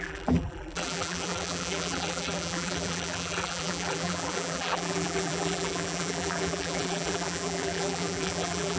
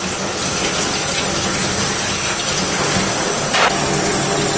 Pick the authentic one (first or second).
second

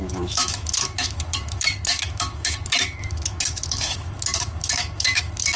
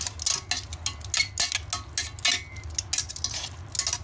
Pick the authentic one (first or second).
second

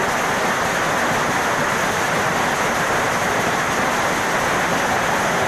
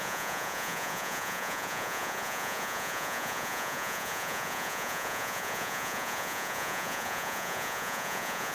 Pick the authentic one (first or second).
first